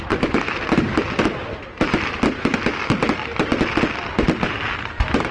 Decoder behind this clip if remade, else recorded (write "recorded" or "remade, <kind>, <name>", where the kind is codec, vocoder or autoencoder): recorded